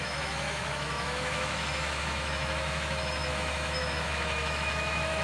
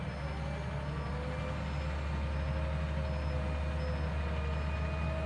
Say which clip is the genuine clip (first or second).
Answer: second